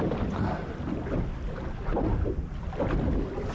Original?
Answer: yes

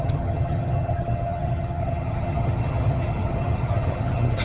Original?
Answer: no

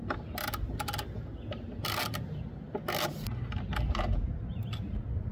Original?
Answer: yes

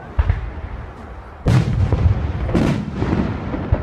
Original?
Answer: yes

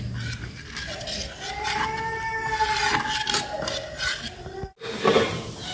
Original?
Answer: yes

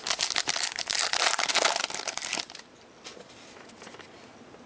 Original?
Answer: yes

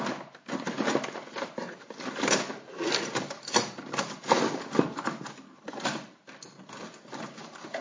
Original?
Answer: yes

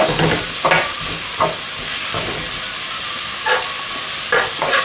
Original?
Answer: yes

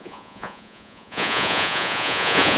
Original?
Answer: no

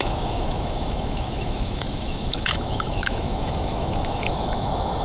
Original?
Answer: no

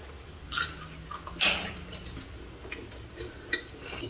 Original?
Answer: yes